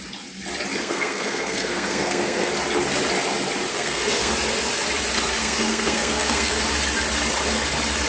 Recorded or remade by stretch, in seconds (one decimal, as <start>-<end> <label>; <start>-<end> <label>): 0.0-0.7 recorded; 0.7-2.5 remade; 2.5-3.7 recorded; 3.7-4.3 remade; 4.3-5.4 recorded; 5.4-6.6 remade; 6.6-8.1 recorded